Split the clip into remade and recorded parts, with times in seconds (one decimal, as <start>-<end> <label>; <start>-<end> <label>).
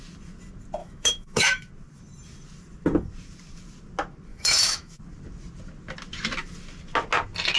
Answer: 0.0-0.8 recorded; 0.8-1.7 remade; 1.7-4.3 recorded; 4.3-5.0 remade; 5.0-7.6 recorded